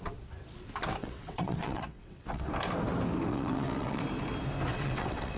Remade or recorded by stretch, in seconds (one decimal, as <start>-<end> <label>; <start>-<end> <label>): 0.0-1.0 recorded; 1.0-2.5 remade; 2.5-3.3 recorded; 3.3-4.0 remade; 4.0-4.7 recorded; 4.7-5.4 remade